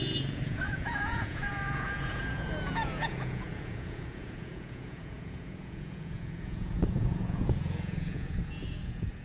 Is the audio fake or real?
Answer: fake